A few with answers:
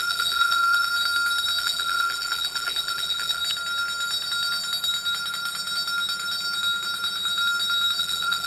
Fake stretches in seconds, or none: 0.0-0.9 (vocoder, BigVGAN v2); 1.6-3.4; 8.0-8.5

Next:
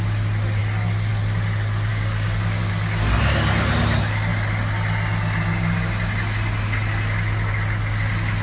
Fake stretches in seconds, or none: 1.9-2.7 (codec, DAC)

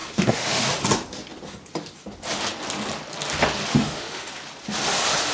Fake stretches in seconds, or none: 0.0-0.6 (autoencoder, DAC-VAE); 3.7-4.3

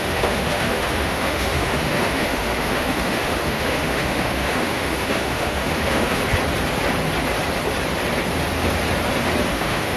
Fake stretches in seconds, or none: 0.0-6.2 (autoencoder, DAC-VAE); 9.5-10.0

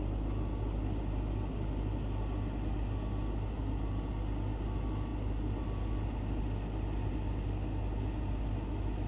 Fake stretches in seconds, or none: none

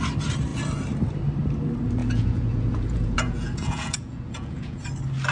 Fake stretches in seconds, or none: 2.0-4.8 (vocoder, Vocos)

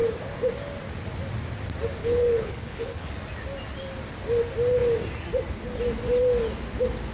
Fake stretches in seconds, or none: 2.0-3.1 (codec, HILCodec)